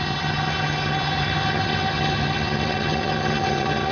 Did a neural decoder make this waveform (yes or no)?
yes